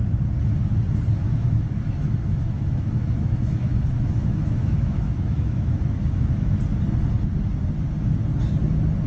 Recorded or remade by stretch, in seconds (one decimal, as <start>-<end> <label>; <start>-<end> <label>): 0.0-1.2 recorded; 1.2-6.5 remade; 6.5-9.1 recorded